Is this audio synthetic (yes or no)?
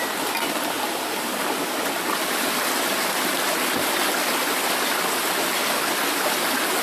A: no